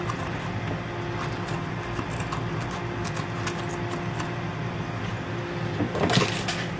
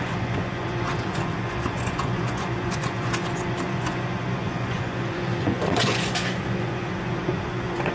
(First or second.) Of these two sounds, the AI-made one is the second